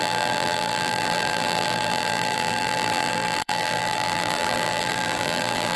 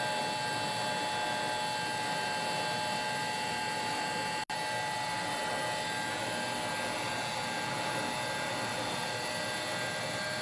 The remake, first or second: first